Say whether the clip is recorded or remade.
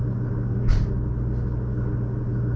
recorded